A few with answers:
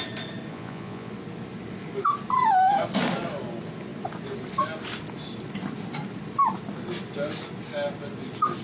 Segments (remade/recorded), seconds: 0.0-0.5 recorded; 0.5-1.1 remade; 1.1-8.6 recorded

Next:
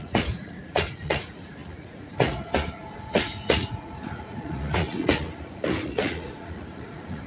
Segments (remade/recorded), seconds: 0.0-7.3 remade

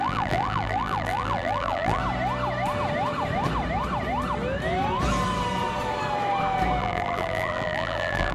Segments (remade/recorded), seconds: 0.0-2.0 remade; 2.0-6.8 recorded; 6.8-8.3 remade